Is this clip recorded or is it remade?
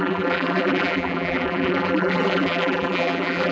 remade